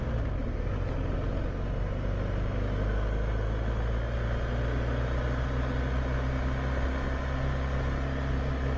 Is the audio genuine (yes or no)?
yes